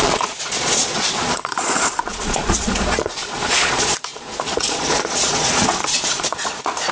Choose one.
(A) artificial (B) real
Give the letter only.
A